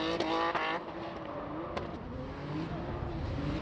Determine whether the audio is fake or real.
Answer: real